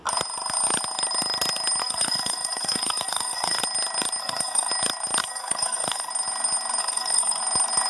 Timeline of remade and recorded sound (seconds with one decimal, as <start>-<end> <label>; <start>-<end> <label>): 0.0-1.8 recorded; 1.8-3.6 remade; 3.6-4.2 recorded; 4.2-4.7 remade; 4.7-5.2 recorded; 5.2-6.1 remade; 6.1-6.8 recorded; 6.8-7.4 remade; 7.4-7.9 recorded